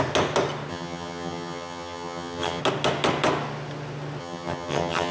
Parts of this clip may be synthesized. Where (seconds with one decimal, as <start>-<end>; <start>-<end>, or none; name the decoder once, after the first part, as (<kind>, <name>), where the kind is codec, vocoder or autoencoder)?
0.7-2.6 (vocoder, HiFi-GAN); 4.2-5.1